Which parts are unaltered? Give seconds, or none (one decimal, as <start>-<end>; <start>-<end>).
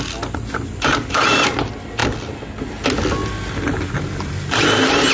0.0-5.1